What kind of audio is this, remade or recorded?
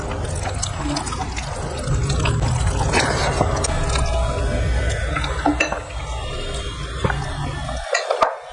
recorded